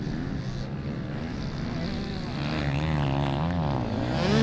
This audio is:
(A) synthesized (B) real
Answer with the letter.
B